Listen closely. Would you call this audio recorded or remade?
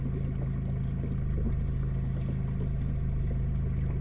recorded